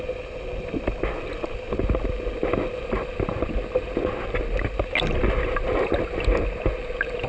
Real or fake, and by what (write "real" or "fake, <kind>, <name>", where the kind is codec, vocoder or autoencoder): real